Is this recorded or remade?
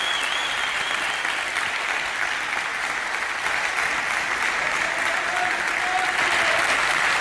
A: recorded